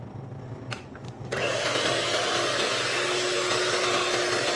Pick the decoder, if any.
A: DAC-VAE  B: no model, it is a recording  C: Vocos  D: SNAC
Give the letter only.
B